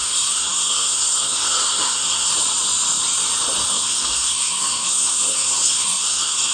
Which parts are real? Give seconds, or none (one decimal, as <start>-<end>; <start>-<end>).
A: 2.3-3.7